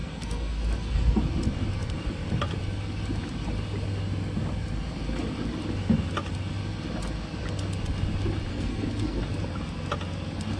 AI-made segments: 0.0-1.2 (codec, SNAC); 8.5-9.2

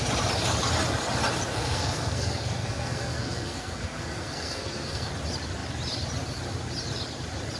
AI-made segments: 1.5-5.1 (codec, SNAC)

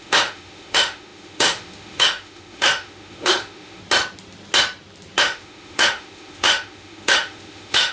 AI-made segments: 0.0-3.8 (autoencoder, DAC-VAE); 5.2-7.9

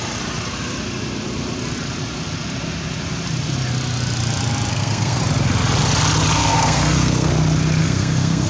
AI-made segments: 4.7-5.2 (codec, SNAC); 6.4-7.3; 7.8-8.5

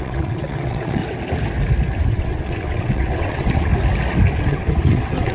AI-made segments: 0.0-1.0 (vocoder, WaveNeXt); 2.1-3.7; 4.3-5.3

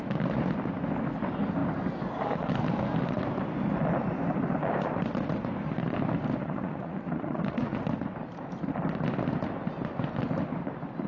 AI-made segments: 6.4-7.8 (vocoder, Vocos)

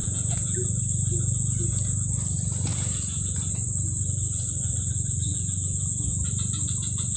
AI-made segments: 0.0-0.8 (vocoder, Vocos); 2.7-3.5; 5.3-6.2

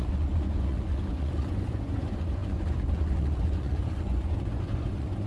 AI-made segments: 0.0-5.3 (vocoder, Vocos)